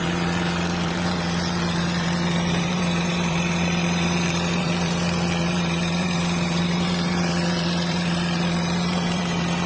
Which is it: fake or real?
fake